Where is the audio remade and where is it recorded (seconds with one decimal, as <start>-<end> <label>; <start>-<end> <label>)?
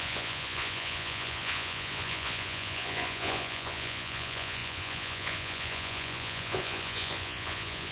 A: 0.0-7.9 remade